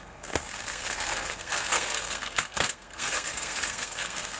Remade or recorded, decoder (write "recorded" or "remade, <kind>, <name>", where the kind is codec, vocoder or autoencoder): remade, codec, SNAC